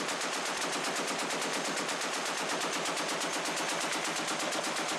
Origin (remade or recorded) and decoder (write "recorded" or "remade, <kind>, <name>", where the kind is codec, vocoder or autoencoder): recorded